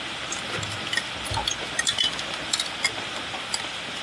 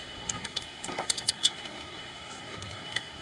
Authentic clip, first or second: first